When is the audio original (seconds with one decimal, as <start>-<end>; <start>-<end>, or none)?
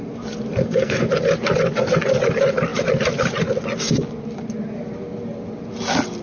0.0-0.6; 1.1-6.2